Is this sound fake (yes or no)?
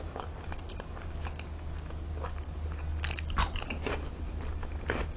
no